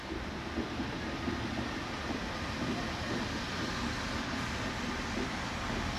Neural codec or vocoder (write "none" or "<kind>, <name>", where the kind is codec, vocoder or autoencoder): none